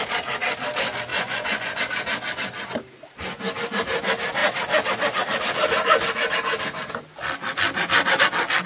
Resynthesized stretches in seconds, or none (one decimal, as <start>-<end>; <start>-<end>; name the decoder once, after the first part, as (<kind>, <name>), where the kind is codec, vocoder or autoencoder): 1.1-1.8 (vocoder, Vocos)

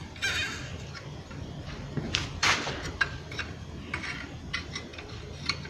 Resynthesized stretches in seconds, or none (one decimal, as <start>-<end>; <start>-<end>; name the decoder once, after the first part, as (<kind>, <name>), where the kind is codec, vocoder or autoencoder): 0.7-3.4 (vocoder, BigVGAN v2); 4.9-5.7